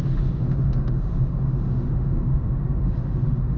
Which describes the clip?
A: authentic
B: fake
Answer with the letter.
B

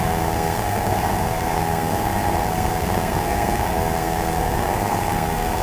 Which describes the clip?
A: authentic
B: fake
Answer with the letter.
B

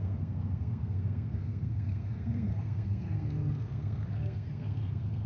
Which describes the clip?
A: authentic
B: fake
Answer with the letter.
B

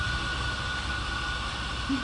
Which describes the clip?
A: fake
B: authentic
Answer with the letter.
B